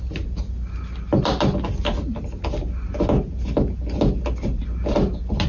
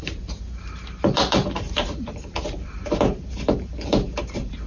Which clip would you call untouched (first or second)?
first